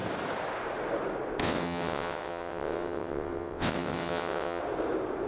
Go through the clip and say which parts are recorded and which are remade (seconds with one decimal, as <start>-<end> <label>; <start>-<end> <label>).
0.0-1.4 recorded; 1.4-4.6 remade; 4.6-5.3 recorded